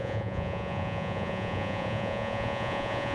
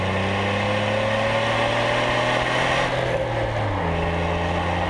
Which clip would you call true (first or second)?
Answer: second